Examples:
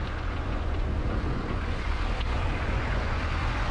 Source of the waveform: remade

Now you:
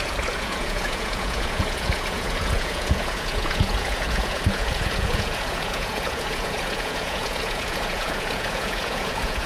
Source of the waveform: remade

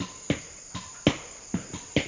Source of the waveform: recorded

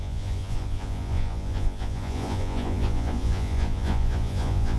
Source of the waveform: remade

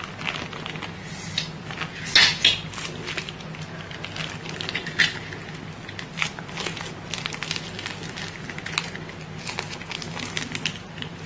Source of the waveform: recorded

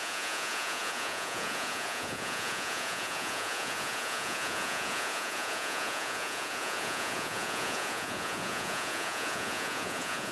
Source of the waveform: remade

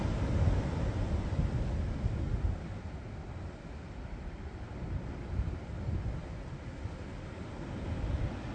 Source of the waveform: recorded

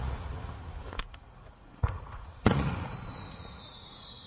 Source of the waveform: remade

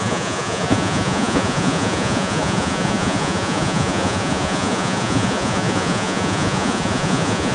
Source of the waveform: remade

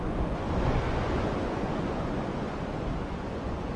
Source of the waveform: remade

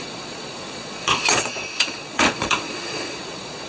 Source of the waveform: remade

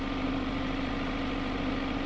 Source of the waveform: recorded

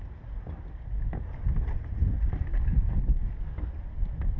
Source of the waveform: recorded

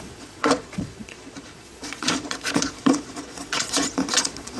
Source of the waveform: remade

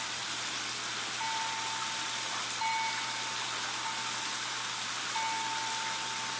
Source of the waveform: recorded